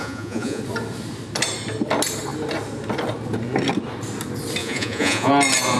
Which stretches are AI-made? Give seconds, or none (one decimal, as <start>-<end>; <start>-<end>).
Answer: 0.0-0.6; 4.6-5.3

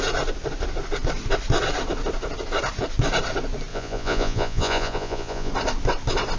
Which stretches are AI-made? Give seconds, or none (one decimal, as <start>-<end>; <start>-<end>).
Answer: 3.7-5.5

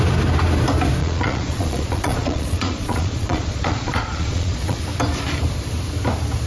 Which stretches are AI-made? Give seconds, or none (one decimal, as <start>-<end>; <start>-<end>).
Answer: 1.0-4.8

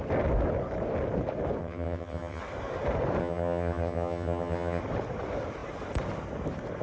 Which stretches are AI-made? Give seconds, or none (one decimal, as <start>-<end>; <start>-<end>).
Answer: 1.6-2.4; 3.2-4.8

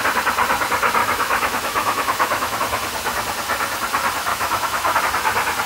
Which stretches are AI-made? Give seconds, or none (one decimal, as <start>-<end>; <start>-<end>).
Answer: 1.0-2.6; 4.3-5.0

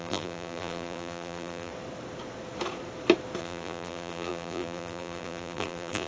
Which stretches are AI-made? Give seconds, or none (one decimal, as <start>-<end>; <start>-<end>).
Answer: 0.0-1.7; 3.4-6.1

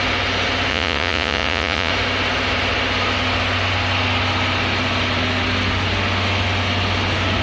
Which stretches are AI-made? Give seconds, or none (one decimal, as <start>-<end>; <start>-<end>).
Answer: 0.7-1.9

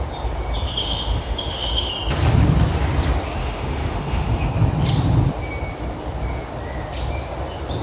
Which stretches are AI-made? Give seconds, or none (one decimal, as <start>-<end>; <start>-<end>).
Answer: 0.8-1.9; 3.4-4.4